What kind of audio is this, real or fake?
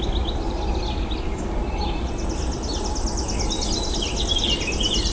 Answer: real